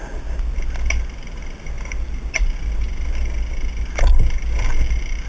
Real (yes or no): yes